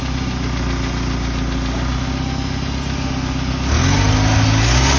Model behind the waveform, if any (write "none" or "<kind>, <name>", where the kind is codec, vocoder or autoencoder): none